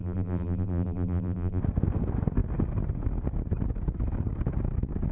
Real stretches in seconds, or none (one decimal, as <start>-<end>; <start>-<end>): 1.6-5.1